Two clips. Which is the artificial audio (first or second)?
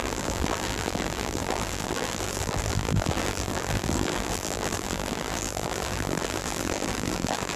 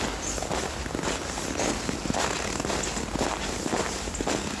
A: first